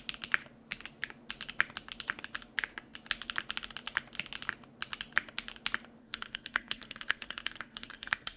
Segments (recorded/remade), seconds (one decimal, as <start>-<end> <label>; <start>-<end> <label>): 0.0-6.0 recorded; 6.0-8.4 remade